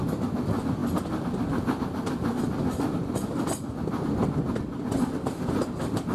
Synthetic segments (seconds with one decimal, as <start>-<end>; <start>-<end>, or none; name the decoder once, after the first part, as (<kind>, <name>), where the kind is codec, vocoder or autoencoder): none